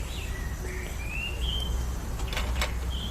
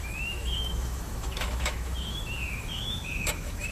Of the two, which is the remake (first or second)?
second